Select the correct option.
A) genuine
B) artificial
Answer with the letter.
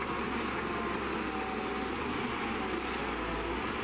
A